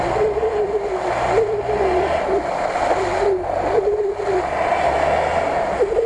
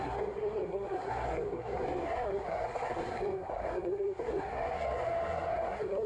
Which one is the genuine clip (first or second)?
first